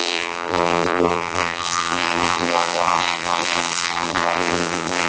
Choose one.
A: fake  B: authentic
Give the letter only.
A